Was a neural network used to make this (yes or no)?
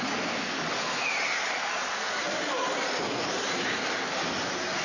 no